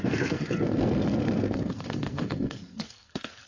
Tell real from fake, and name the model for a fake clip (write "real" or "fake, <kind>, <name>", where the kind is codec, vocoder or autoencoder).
fake, codec, SNAC